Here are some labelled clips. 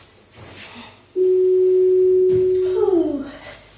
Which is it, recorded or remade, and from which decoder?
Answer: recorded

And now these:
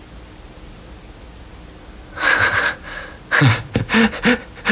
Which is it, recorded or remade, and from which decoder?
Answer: recorded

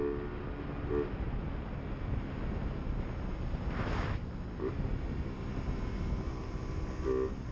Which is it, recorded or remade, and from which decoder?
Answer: recorded